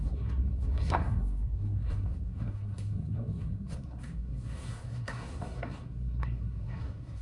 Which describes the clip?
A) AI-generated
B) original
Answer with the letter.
A